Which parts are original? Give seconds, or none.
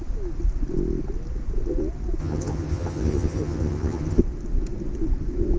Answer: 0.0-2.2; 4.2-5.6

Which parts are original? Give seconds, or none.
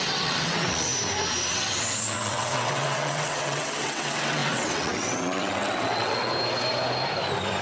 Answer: 0.9-1.5; 6.3-7.6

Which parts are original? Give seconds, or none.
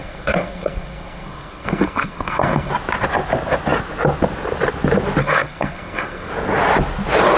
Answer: 2.7-5.2; 6.3-7.4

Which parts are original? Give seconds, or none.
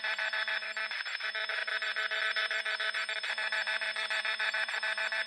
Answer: none